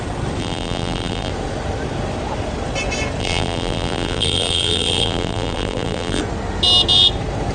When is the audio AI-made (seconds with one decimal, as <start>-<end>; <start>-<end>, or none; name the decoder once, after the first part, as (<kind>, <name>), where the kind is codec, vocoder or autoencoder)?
0.4-1.3 (vocoder, BigVGAN v2); 3.2-6.2

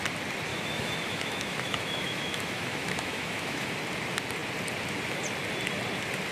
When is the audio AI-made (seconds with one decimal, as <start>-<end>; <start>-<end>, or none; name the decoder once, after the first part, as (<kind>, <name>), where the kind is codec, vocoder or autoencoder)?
0.5-3.7 (autoencoder, DAC-VAE)